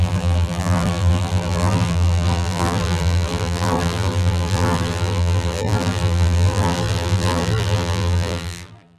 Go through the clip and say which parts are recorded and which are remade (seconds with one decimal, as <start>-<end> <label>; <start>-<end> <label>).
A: 0.0-9.0 remade